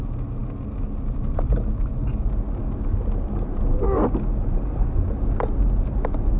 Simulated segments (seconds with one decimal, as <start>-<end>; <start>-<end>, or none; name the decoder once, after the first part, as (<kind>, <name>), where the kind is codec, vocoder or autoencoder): none